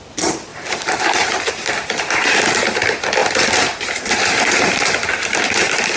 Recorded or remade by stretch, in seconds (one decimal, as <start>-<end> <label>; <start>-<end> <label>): 0.0-0.5 recorded; 0.5-1.5 remade; 1.5-6.0 recorded